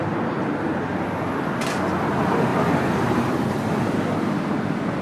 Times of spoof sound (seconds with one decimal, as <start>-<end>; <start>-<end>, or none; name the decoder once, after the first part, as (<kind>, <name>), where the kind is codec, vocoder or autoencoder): 2.5-3.6 (vocoder, BigVGAN v2)